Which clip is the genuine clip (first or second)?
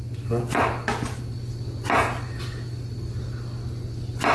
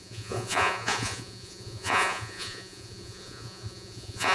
first